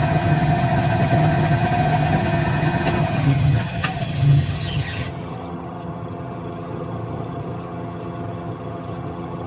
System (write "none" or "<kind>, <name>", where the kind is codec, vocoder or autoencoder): vocoder, HiFi-GAN